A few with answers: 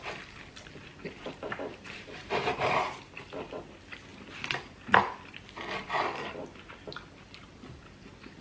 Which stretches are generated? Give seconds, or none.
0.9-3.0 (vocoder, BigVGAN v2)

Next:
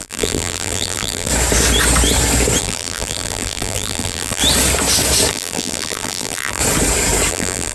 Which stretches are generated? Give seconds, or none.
0.0-1.3 (vocoder, BigVGAN v2); 2.6-4.4; 5.3-6.6; 7.3-7.7

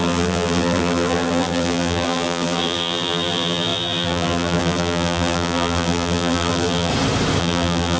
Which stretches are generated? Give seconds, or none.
0.0-6.9 (vocoder, BigVGAN v2); 7.4-8.0